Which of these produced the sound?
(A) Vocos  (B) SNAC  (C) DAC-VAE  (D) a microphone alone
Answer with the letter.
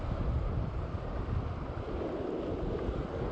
D